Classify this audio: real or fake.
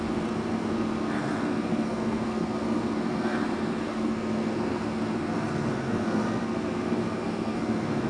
fake